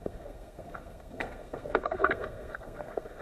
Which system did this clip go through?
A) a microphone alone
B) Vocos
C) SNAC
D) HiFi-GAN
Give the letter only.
C